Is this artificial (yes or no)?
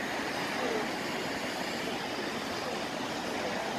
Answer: no